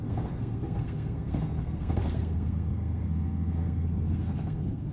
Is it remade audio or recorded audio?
remade